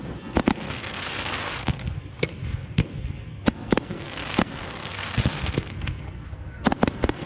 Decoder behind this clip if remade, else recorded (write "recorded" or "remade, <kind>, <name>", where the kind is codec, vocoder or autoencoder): remade, codec, SNAC